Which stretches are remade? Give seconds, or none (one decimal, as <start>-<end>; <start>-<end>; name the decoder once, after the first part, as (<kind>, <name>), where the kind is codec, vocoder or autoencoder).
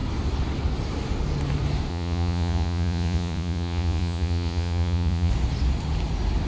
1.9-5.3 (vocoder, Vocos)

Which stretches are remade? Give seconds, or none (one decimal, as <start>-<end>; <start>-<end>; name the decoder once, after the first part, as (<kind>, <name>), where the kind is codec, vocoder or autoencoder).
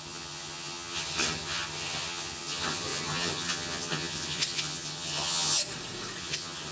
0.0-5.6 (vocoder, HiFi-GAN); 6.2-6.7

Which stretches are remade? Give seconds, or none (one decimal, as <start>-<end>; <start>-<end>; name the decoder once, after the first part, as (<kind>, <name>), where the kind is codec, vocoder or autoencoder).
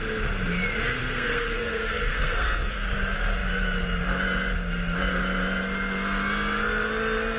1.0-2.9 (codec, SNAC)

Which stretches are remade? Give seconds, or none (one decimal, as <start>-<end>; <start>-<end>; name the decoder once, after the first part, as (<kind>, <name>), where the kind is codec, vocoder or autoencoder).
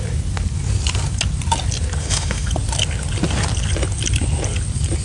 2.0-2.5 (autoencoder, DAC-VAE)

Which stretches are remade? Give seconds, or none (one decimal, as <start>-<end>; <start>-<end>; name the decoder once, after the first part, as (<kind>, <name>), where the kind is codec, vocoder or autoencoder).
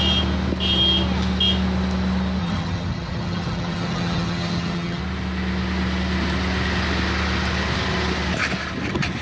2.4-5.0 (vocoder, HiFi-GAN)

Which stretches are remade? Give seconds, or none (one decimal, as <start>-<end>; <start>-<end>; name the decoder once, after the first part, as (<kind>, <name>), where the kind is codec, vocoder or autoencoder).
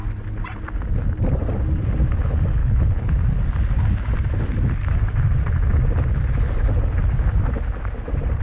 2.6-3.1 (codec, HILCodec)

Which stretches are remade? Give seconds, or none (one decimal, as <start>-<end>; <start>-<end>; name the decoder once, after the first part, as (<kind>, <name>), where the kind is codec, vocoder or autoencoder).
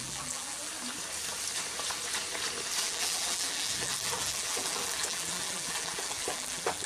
0.0-0.7 (vocoder, BigVGAN v2); 2.8-6.9